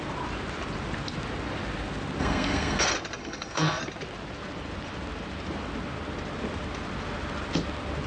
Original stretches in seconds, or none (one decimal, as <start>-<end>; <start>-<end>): 0.0-2.2; 2.8-3.2; 3.8-8.1